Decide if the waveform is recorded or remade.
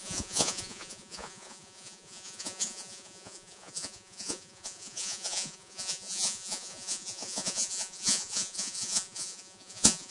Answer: remade